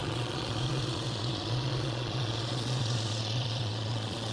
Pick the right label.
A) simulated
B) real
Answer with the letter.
A